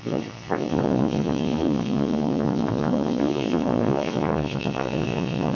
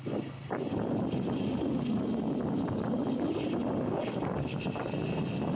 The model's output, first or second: first